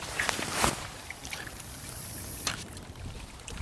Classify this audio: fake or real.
fake